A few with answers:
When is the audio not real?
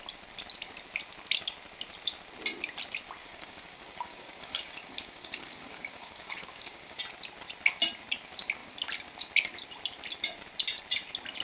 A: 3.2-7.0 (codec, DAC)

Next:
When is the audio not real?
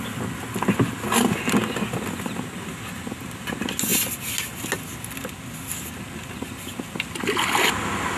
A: none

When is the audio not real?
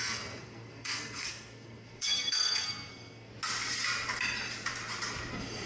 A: 0.0-3.3 (codec, SNAC); 5.3-5.7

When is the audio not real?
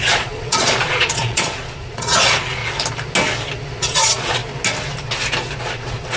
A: 0.0-2.6 (vocoder, Vocos); 3.8-4.4; 5.6-6.2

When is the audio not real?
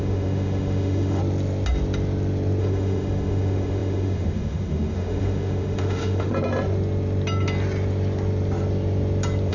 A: 0.0-1.2 (autoencoder, DAC-VAE); 2.6-6.3